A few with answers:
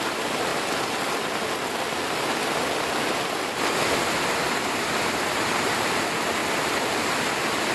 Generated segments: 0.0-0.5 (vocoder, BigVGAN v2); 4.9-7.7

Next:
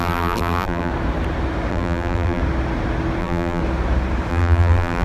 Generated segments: 0.0-0.9 (vocoder, BigVGAN v2); 1.7-2.4; 3.2-3.6; 4.3-5.0

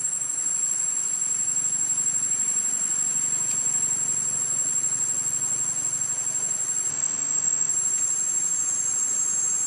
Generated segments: 6.9-7.7 (autoencoder, DAC-VAE)

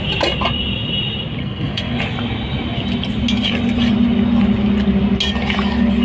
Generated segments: 1.4-2.0 (codec, SNAC)

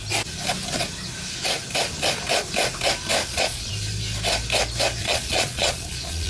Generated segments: 3.2-3.7 (vocoder, Vocos); 5.0-6.3

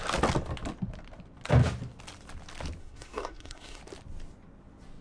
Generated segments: 2.8-3.8 (codec, SNAC)

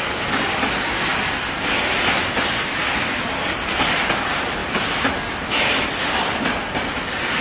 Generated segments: none